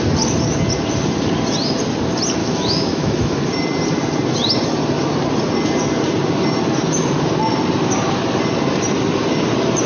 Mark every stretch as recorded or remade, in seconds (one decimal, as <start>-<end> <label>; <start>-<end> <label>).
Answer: 0.0-2.4 recorded; 2.4-3.3 remade; 3.3-9.9 recorded